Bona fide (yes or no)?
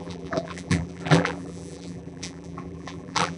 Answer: no